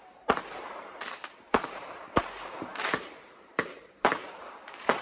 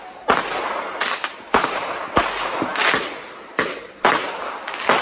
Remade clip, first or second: first